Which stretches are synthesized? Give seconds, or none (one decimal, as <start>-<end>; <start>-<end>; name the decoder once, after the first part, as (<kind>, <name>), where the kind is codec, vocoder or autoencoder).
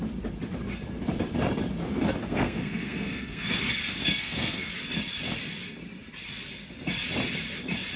2.2-3.6 (codec, SNAC); 4.0-4.7